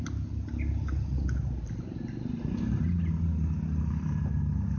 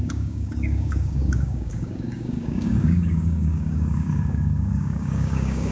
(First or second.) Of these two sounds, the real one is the first